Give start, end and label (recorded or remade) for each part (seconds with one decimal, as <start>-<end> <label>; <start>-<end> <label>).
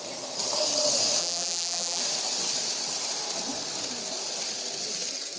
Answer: 0.0-1.2 recorded; 1.2-2.0 remade; 2.0-5.4 recorded